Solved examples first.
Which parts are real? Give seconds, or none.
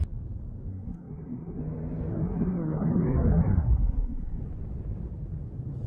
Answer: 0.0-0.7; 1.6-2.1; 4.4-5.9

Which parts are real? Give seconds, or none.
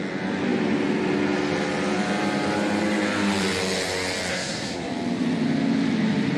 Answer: 0.0-4.3; 4.9-6.4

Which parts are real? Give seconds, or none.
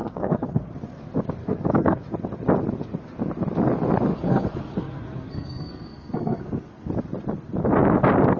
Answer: 0.7-1.4; 2.0-4.1; 6.9-8.4